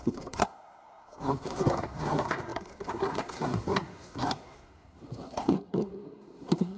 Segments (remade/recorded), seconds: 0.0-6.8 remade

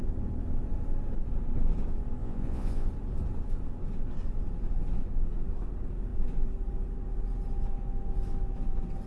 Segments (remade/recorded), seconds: 0.0-2.2 recorded; 2.2-2.9 remade; 2.9-9.1 recorded

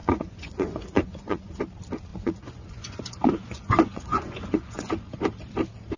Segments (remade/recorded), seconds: 0.0-1.6 remade; 1.6-2.1 recorded; 2.1-4.9 remade; 4.9-6.0 recorded

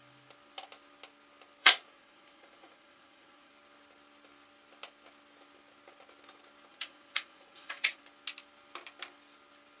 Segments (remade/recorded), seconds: 0.0-1.6 recorded; 1.6-3.5 remade; 3.5-6.7 recorded; 6.7-8.0 remade; 8.0-9.8 recorded